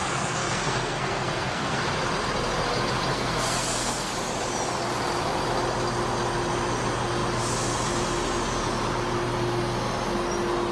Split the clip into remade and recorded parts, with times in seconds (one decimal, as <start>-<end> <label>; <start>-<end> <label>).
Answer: 0.0-1.9 remade; 1.9-3.1 recorded; 3.1-4.1 remade; 4.1-10.7 recorded